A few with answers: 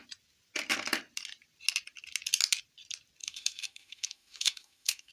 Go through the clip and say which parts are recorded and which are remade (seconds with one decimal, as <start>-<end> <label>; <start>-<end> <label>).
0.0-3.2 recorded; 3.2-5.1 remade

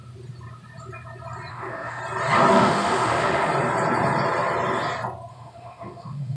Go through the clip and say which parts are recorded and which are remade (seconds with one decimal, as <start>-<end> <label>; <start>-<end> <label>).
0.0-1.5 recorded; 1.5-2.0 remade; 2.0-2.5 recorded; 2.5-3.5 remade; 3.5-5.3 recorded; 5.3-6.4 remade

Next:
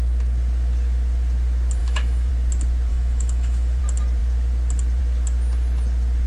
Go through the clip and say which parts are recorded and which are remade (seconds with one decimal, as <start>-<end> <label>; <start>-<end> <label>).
0.0-1.8 recorded; 1.8-2.3 remade; 2.3-2.9 recorded; 2.9-3.8 remade; 3.8-6.3 recorded

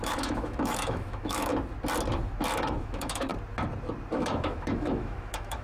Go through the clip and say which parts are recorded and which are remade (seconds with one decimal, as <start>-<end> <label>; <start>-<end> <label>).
0.0-1.5 remade; 1.5-2.8 recorded; 2.8-3.3 remade; 3.3-4.1 recorded; 4.1-5.6 remade